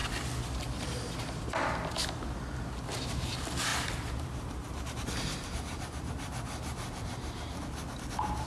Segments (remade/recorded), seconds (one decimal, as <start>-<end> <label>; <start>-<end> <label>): 0.0-3.7 recorded; 3.7-7.6 remade; 7.6-8.5 recorded